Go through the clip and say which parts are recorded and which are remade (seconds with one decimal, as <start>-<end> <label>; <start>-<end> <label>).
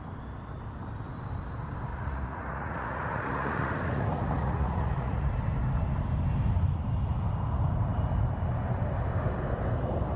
0.0-1.9 recorded; 1.9-5.3 remade; 5.3-10.2 recorded